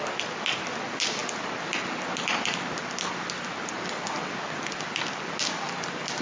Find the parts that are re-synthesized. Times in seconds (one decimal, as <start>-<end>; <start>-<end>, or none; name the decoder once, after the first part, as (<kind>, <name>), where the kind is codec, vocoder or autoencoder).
none

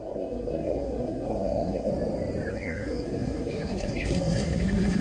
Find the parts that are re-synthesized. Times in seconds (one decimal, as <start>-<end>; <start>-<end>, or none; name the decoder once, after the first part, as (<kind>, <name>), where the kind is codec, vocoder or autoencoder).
0.0-1.9 (codec, SNAC); 2.5-5.0